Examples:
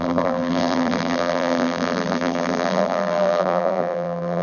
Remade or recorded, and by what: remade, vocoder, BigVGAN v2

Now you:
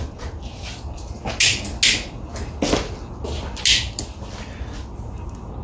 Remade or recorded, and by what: recorded